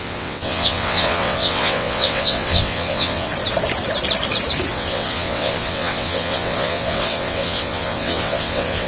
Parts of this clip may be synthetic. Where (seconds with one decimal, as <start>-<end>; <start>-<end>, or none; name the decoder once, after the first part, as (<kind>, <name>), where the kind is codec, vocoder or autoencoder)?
0.0-3.3 (vocoder, WaveNeXt); 4.7-8.9